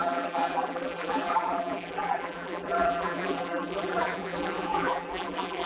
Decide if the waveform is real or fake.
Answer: fake